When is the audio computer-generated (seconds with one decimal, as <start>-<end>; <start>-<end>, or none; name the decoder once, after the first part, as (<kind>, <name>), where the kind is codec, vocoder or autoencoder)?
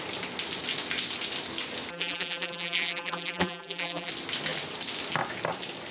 1.9-4.1 (vocoder, BigVGAN v2)